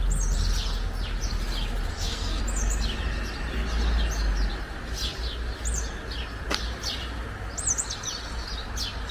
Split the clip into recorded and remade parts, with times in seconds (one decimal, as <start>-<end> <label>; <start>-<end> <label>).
0.0-1.9 recorded; 1.9-2.4 remade; 2.4-9.1 recorded